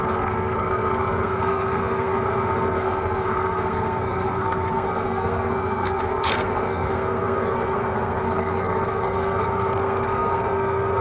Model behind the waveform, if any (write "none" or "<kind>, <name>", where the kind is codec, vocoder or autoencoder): codec, SNAC